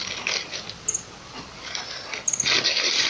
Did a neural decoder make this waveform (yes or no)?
no